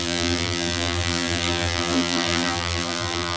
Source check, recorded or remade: remade